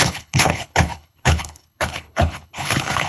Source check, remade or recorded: remade